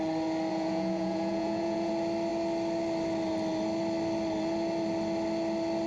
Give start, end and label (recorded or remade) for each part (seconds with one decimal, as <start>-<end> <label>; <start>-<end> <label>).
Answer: 0.0-0.5 recorded; 0.5-1.9 remade; 1.9-5.9 recorded